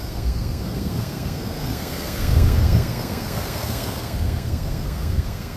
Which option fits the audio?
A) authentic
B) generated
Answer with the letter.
B